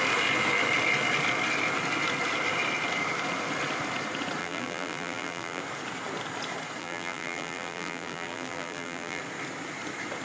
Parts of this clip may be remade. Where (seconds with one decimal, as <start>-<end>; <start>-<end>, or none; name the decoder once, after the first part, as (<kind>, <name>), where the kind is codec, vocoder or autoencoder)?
4.4-5.6 (vocoder, BigVGAN v2); 6.8-9.2